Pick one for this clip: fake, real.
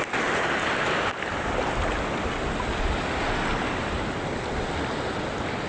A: real